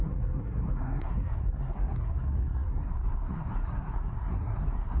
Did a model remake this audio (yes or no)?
yes